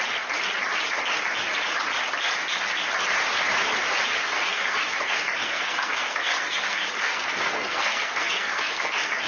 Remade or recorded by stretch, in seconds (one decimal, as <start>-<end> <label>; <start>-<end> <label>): 0.0-4.2 recorded; 4.2-9.3 remade

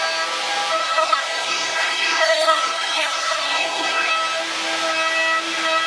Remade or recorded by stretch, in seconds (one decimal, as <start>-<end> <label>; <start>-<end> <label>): 0.0-0.8 recorded; 0.8-4.1 remade; 4.1-5.9 recorded

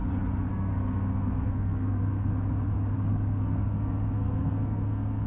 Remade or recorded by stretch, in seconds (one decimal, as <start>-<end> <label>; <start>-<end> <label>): 0.0-0.5 recorded; 0.5-2.3 remade; 2.3-3.1 recorded; 3.1-5.3 remade

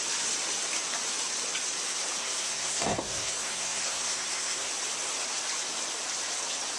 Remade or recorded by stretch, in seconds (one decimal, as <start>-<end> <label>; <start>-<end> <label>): 0.0-2.2 recorded; 2.2-4.7 remade; 4.7-6.8 recorded